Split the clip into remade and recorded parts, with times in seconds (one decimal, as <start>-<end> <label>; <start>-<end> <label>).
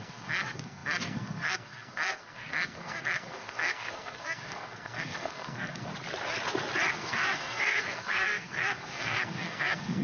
0.0-5.9 remade; 5.9-6.9 recorded; 6.9-10.0 remade